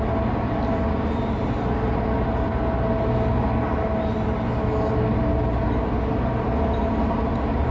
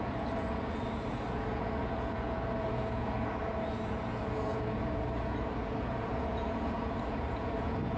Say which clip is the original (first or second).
first